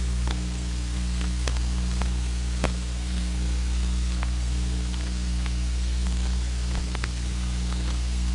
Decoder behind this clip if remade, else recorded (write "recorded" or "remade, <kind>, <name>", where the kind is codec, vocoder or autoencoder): remade, codec, SNAC